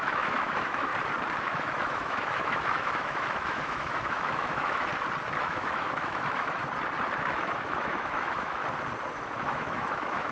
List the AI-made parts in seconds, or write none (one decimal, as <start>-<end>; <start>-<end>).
0.0-0.9; 1.4-4.9; 5.4-6.6; 7.2-8.6; 9.1-10.3